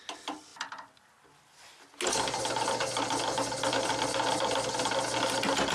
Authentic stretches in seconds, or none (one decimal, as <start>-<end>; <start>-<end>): 0.0-5.7